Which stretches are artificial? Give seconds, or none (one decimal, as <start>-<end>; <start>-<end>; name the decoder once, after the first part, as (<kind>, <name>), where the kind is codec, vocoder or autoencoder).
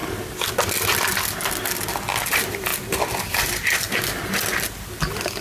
2.7-3.9 (vocoder, BigVGAN v2)